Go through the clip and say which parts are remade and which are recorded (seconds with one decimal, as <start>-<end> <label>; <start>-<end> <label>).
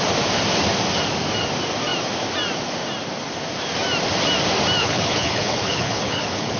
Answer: 0.0-4.8 recorded; 4.8-6.6 remade